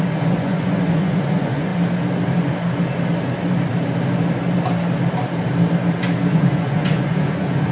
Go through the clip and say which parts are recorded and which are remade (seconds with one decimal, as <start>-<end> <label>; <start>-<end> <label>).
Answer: 0.0-1.7 remade; 1.7-6.3 recorded; 6.3-7.7 remade